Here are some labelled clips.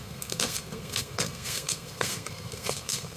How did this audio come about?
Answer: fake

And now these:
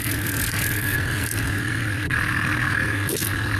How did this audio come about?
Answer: fake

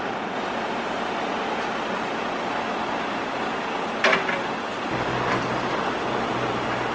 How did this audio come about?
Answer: real